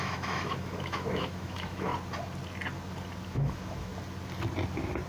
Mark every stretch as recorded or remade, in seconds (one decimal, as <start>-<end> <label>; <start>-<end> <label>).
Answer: 0.0-1.9 remade; 1.9-3.3 recorded; 3.3-3.9 remade; 3.9-5.1 recorded